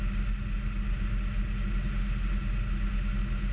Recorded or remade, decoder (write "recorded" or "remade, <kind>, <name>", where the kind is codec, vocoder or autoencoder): recorded